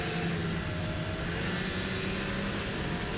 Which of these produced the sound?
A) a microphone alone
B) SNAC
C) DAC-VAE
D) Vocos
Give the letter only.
A